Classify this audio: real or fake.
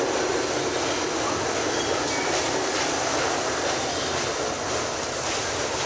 real